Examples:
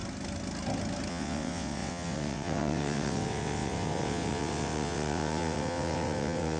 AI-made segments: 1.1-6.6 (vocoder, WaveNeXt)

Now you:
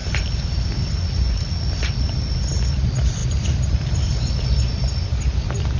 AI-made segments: 0.0-0.7 (vocoder, BigVGAN v2); 3.2-4.7

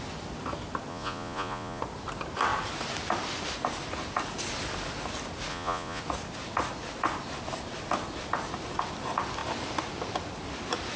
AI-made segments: 0.9-1.8 (vocoder, Vocos); 5.5-6.0

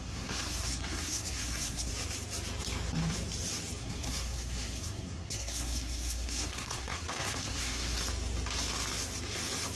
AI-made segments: 0.0-1.9 (codec, SNAC); 3.8-8.0